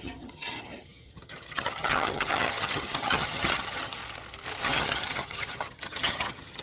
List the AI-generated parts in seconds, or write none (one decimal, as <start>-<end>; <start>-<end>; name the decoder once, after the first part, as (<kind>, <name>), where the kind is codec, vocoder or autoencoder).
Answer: 0.0-4.0 (vocoder, HiFi-GAN); 4.6-6.6